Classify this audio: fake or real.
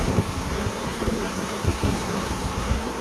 fake